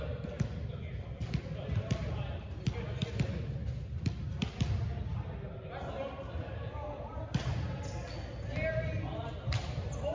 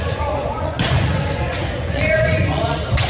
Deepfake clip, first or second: second